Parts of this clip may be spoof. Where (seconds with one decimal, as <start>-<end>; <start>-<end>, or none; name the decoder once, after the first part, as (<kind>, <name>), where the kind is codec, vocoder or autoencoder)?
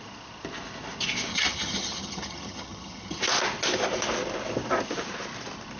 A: 1.3-3.2 (vocoder, HiFi-GAN)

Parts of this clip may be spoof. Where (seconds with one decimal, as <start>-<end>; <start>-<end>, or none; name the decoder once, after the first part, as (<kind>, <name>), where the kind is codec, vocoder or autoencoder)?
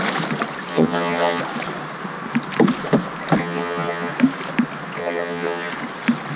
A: 0.7-1.4 (vocoder, HiFi-GAN); 3.4-4.1; 5.0-5.7